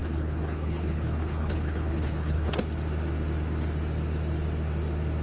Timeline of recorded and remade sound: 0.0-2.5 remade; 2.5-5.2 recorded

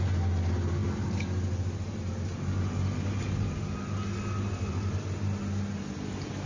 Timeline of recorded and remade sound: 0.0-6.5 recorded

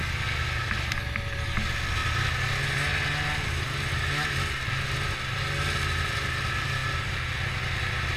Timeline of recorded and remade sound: 0.0-8.2 recorded